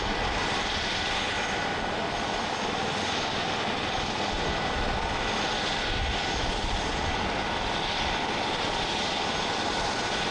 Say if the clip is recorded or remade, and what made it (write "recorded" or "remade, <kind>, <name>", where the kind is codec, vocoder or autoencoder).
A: recorded